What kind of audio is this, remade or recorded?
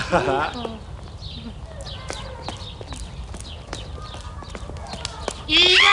recorded